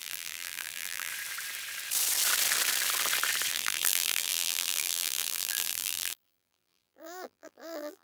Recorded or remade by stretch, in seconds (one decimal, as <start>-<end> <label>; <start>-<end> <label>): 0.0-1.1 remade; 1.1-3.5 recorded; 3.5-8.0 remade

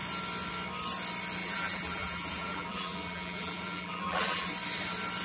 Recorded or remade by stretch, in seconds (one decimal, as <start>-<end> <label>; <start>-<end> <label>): 0.0-1.4 recorded; 1.4-4.5 remade; 4.5-5.2 recorded

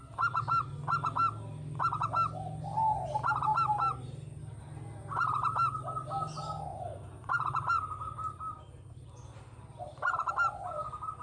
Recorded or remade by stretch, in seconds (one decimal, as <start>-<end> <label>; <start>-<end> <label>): 0.0-6.7 recorded; 6.7-10.3 remade; 10.3-11.2 recorded

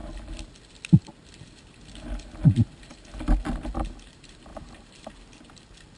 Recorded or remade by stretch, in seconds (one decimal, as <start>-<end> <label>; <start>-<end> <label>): 0.0-4.5 recorded; 4.5-5.1 remade; 5.1-6.0 recorded

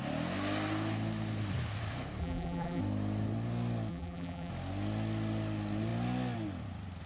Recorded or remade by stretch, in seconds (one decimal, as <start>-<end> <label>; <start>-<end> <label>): 0.0-2.2 recorded; 2.2-2.8 remade; 2.8-3.9 recorded; 3.9-4.5 remade; 4.5-7.1 recorded